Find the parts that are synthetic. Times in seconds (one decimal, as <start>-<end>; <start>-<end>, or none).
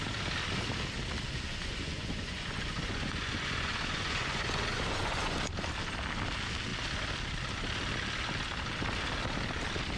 1.5-5.4